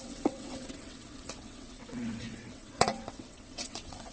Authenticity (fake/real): fake